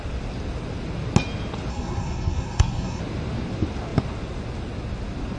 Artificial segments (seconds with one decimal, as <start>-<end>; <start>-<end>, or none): 1.7-3.0